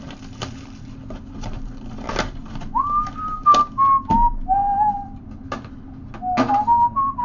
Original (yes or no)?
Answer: yes